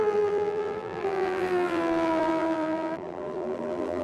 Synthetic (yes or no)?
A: yes